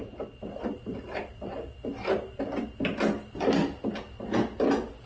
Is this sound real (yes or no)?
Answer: yes